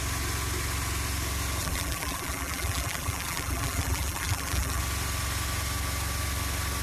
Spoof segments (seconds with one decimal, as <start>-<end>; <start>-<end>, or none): 1.6-4.8